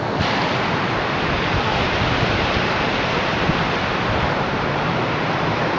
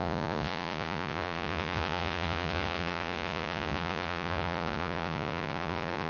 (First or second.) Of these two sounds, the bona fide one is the first